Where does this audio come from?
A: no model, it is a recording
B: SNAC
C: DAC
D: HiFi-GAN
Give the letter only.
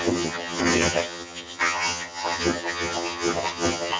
D